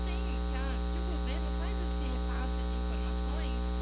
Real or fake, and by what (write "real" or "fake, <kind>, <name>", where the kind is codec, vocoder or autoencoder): real